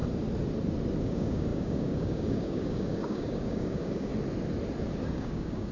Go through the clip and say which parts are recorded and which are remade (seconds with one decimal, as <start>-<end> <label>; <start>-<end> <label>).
0.0-1.0 recorded; 1.0-4.1 remade; 4.1-5.0 recorded; 5.0-5.7 remade